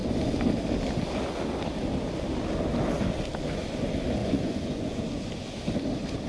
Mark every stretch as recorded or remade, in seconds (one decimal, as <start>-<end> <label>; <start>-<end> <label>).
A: 0.0-4.2 recorded; 4.2-5.0 remade; 5.0-6.3 recorded